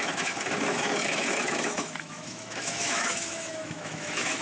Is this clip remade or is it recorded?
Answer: remade